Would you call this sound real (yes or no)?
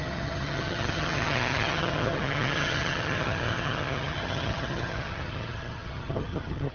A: no